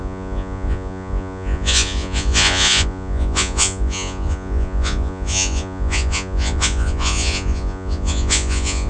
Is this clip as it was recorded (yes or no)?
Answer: no